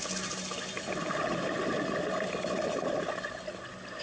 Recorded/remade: recorded